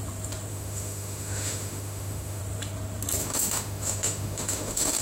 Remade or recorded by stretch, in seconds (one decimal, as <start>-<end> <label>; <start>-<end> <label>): 0.0-0.5 recorded; 0.5-2.4 remade; 2.4-3.2 recorded; 3.2-5.0 remade